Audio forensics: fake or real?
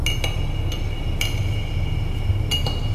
real